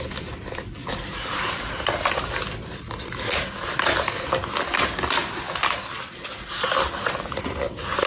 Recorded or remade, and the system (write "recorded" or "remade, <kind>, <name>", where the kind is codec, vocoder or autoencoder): recorded